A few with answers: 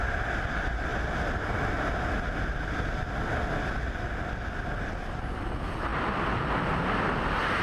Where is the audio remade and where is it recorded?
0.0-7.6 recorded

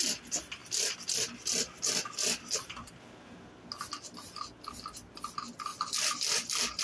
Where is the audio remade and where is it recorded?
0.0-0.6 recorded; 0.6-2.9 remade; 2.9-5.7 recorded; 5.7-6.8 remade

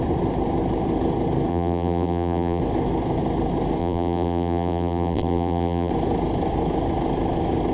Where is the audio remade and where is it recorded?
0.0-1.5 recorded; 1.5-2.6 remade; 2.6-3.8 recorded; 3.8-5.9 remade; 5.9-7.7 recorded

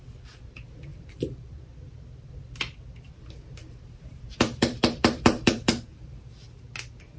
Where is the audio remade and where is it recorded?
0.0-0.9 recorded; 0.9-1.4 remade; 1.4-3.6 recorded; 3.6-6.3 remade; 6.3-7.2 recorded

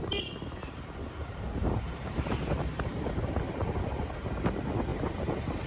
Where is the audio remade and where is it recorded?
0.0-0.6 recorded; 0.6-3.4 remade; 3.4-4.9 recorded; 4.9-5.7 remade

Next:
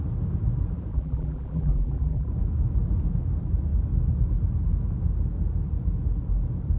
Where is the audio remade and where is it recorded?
0.0-0.9 recorded; 0.9-2.3 remade; 2.3-6.8 recorded

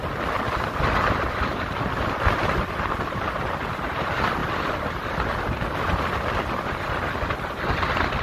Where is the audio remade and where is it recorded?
0.0-4.4 recorded; 4.4-5.6 remade; 5.6-8.2 recorded

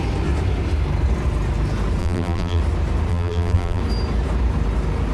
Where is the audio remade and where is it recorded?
0.0-2.0 recorded; 2.0-2.6 remade; 2.6-3.1 recorded; 3.1-3.8 remade; 3.8-5.1 recorded